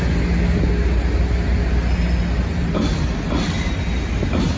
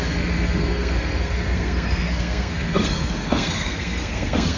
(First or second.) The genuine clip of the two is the first